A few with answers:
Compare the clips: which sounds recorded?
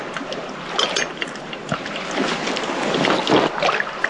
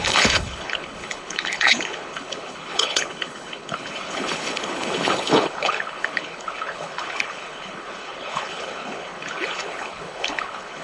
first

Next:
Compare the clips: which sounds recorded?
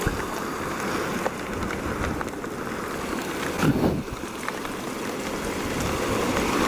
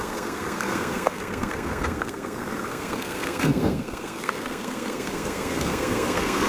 first